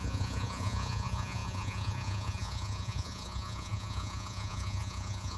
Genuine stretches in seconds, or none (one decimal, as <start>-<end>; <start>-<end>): none

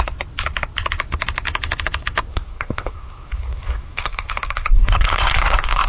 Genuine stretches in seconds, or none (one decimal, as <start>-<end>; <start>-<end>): 0.0-2.3

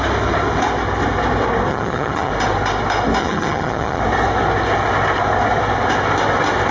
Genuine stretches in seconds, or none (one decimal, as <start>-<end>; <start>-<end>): 0.0-1.7; 2.3-3.2; 4.0-6.7